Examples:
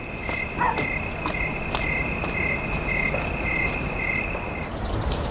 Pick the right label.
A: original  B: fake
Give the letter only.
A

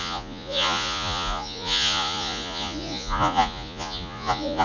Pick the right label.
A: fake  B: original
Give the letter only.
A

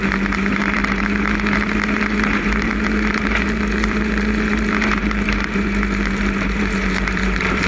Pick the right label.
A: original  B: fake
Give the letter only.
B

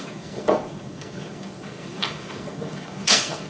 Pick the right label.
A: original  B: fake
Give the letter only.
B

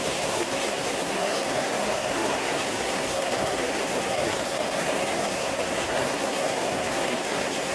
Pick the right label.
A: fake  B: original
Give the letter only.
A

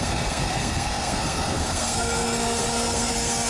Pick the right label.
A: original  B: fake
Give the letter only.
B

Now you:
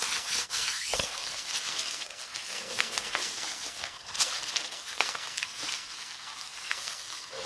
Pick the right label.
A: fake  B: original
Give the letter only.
A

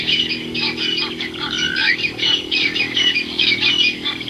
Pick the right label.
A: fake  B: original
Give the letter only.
A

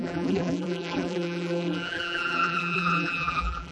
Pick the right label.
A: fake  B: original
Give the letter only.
A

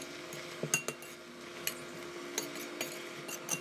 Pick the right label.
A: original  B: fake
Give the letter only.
A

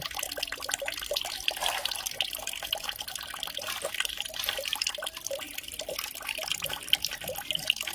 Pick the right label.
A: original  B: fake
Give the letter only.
A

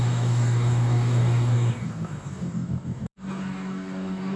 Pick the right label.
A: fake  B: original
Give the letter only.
A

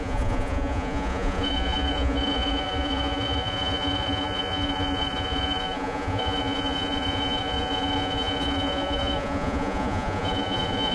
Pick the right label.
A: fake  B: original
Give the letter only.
A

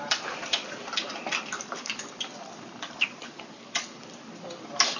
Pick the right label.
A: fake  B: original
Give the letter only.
A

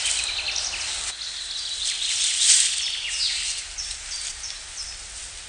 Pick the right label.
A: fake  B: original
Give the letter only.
B